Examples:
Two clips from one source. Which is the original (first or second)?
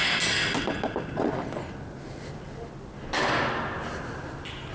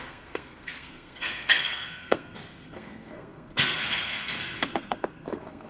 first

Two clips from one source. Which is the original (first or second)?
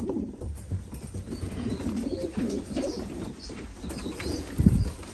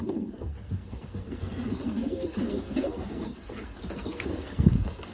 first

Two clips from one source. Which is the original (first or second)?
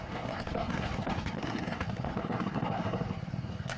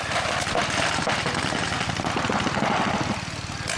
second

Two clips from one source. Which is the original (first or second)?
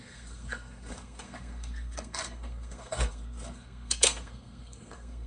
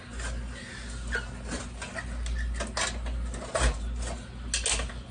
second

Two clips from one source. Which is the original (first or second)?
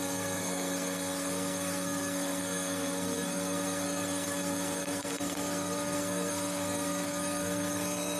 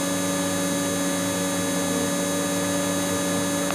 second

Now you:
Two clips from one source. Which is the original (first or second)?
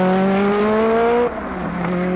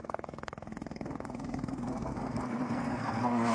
first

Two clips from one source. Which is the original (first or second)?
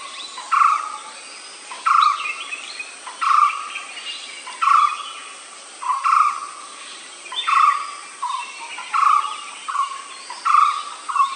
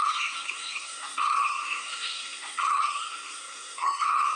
first